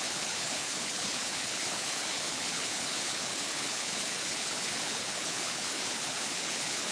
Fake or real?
fake